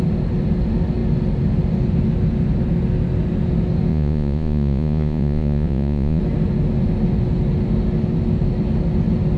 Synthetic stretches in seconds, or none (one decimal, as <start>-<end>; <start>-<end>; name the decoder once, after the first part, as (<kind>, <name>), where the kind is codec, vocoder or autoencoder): 3.9-6.2 (vocoder, Vocos)